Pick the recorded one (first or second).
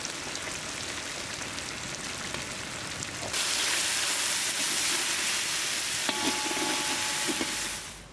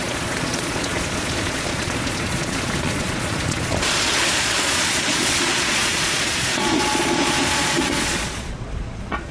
first